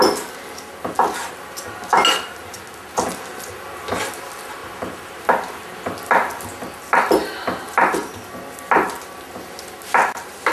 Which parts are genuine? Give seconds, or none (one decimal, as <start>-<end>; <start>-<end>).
0.0-4.6; 5.2-10.5